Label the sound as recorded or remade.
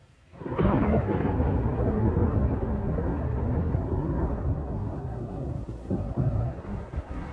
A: remade